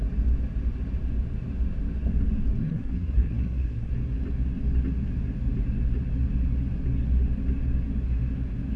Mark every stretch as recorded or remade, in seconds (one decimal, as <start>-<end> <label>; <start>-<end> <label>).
0.0-2.6 recorded; 2.6-3.9 remade; 3.9-8.8 recorded